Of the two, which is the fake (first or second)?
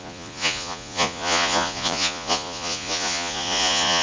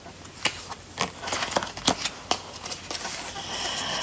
first